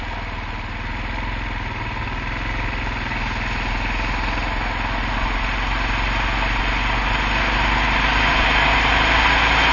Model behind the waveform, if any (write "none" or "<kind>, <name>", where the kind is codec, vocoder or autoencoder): none